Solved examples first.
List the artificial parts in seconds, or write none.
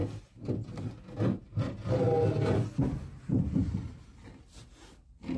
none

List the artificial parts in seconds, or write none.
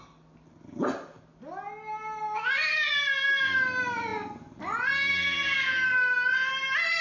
none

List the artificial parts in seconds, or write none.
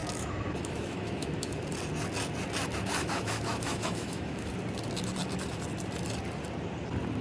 0.0-1.6; 3.0-4.5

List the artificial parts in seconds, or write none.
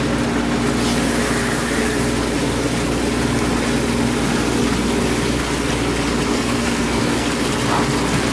6.3-7.3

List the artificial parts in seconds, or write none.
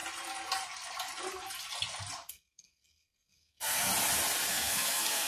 2.3-3.9; 4.5-5.3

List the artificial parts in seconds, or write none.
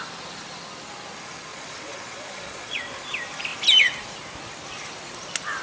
1.5-2.8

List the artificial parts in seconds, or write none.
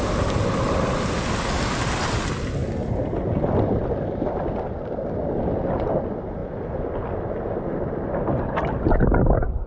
none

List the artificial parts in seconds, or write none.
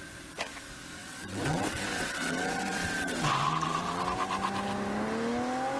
1.0-4.0